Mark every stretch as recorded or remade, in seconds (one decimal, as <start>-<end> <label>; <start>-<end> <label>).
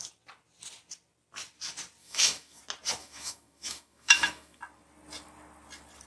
0.0-2.0 recorded; 2.0-2.6 remade; 2.6-3.0 recorded; 3.0-4.6 remade; 4.6-6.1 recorded